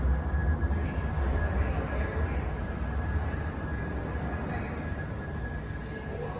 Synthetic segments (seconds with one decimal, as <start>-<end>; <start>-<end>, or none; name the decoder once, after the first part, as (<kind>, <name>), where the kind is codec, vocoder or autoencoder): none